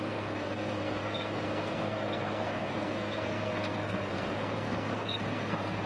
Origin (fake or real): fake